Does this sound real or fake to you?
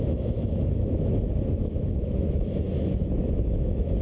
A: fake